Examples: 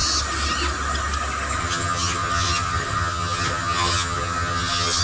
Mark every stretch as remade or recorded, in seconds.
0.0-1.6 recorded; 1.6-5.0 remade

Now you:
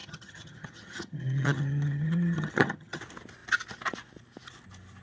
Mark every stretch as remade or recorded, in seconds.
0.0-3.0 remade; 3.0-5.0 recorded

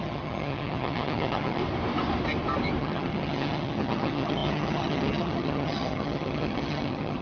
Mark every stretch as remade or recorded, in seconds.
0.0-1.6 remade; 1.6-2.8 recorded; 2.8-7.2 remade

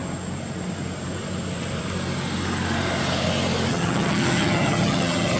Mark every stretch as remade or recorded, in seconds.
0.0-3.7 recorded; 3.7-5.4 remade

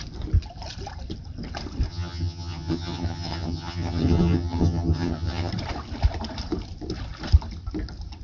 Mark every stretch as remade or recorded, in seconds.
0.0-1.9 recorded; 1.9-5.5 remade; 5.5-8.2 recorded

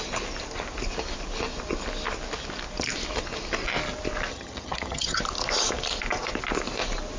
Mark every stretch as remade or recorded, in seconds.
0.0-4.3 recorded; 4.3-5.2 remade; 5.2-7.2 recorded

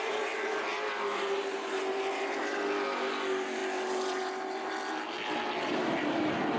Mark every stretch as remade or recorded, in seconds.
0.0-6.6 recorded

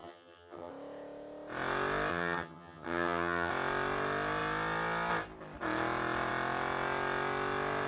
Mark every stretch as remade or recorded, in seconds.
0.0-0.7 remade; 0.7-2.1 recorded; 2.1-3.5 remade; 3.5-7.9 recorded